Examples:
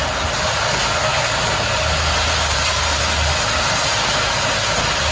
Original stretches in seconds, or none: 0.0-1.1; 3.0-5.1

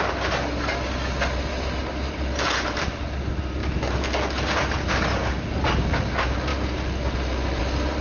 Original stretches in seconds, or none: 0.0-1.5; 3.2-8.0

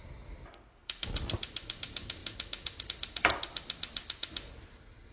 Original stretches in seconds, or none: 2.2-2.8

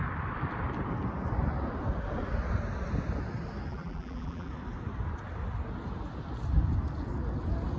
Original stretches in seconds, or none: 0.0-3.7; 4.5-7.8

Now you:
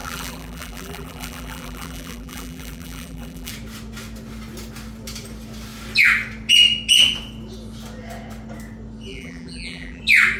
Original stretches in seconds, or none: 3.5-9.1; 10.0-10.4

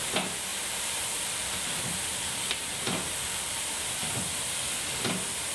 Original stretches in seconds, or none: 0.0-0.5; 3.8-5.5

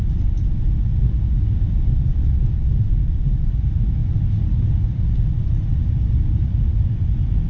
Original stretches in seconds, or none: 0.0-7.5

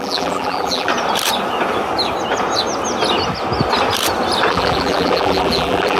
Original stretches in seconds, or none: 0.9-4.5